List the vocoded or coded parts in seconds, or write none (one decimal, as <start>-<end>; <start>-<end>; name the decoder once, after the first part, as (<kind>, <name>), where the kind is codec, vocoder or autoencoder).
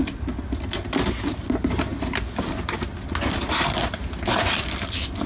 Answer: none